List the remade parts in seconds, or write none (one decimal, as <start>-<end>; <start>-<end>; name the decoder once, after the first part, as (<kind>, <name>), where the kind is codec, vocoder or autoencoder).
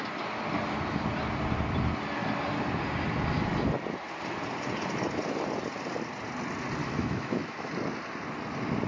6.8-7.7 (autoencoder, DAC-VAE)